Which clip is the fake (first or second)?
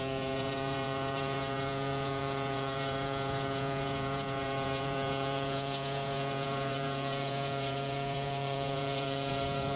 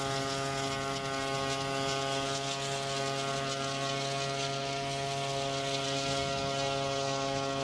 first